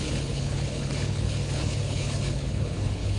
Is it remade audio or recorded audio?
remade